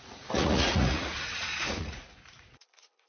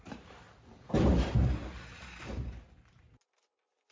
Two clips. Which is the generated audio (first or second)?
first